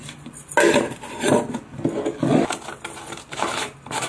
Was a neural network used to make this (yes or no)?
no